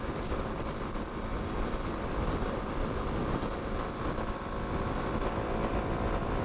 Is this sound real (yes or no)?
yes